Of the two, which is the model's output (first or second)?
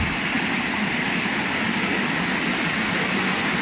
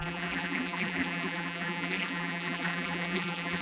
second